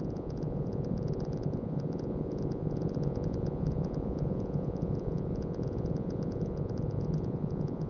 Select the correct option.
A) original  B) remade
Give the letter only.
B